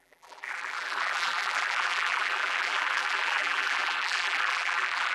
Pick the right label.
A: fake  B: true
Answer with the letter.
A